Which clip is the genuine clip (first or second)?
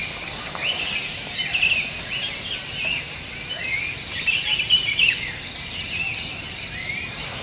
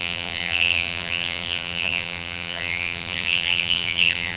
first